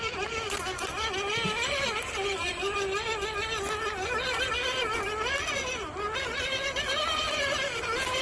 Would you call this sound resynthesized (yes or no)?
no